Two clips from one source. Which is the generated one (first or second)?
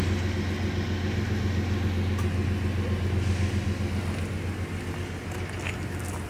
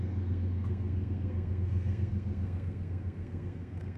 second